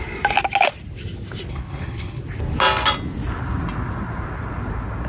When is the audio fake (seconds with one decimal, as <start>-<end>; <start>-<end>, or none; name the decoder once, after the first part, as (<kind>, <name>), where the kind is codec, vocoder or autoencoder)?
1.5-2.2 (codec, HILCodec)

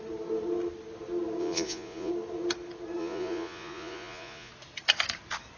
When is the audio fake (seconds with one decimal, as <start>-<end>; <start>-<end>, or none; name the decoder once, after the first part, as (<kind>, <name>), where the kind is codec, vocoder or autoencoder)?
1.4-2.1 (vocoder, Vocos); 3.0-4.5

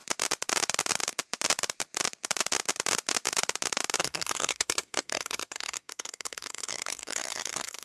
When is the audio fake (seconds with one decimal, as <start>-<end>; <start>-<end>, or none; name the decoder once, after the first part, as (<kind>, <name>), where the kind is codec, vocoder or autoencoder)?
4.0-7.8 (codec, SNAC)

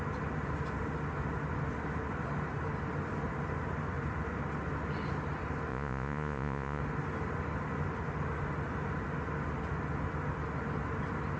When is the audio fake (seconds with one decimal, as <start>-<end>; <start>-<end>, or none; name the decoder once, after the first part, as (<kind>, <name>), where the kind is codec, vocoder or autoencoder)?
5.7-6.8 (vocoder, Vocos)